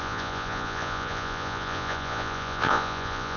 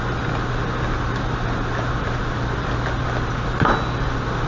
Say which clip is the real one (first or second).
second